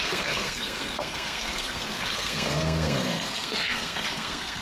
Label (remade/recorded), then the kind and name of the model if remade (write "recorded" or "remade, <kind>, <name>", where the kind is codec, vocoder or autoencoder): remade, codec, SNAC